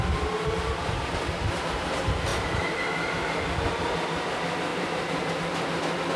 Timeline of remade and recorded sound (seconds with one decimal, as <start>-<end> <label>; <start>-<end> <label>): 0.0-2.3 recorded; 2.3-2.8 remade; 2.8-4.7 recorded; 4.7-5.3 remade; 5.3-6.2 recorded